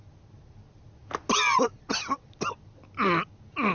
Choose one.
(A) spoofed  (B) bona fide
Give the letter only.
B